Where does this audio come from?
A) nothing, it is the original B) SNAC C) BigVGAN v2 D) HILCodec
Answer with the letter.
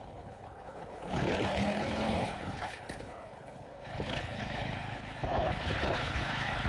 D